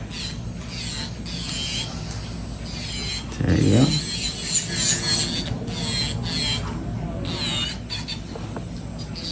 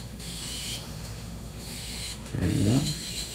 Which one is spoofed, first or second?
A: second